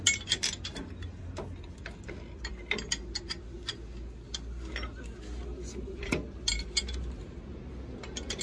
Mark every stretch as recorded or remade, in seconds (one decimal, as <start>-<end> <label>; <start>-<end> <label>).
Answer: 0.0-8.4 recorded